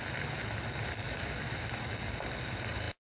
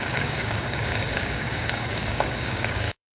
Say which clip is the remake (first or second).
second